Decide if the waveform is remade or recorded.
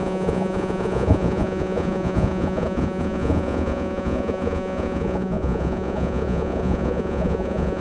remade